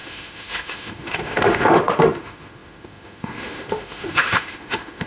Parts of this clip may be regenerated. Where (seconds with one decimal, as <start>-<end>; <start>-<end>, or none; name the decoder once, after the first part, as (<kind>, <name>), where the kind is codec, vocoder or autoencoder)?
0.0-5.1 (autoencoder, DAC-VAE)